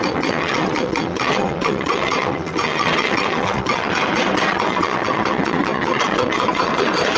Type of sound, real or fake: fake